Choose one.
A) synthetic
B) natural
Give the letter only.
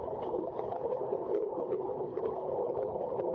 A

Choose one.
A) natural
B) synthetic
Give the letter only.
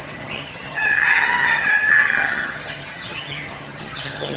B